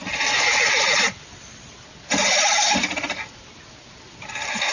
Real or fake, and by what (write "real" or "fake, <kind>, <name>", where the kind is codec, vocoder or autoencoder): real